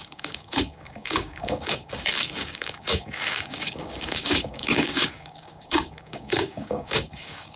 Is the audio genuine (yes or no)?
no